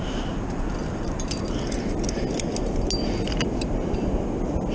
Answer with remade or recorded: recorded